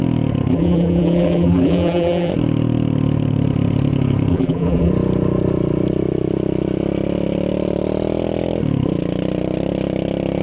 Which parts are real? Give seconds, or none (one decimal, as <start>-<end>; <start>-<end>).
0.0-0.5; 2.3-4.3; 4.9-10.4